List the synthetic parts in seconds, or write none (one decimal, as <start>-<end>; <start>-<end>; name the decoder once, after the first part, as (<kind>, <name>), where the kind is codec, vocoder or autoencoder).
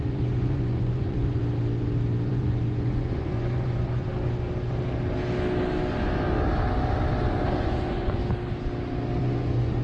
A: 0.0-1.4 (vocoder, Vocos); 2.3-4.1; 7.6-8.2; 9.2-9.8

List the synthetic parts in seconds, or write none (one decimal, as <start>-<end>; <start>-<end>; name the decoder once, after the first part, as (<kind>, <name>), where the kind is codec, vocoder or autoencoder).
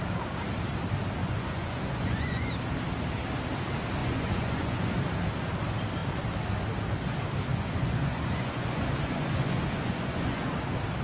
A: 1.2-2.5 (vocoder, Vocos); 4.0-4.9; 7.5-10.5